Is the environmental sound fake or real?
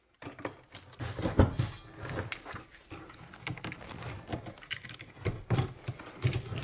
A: real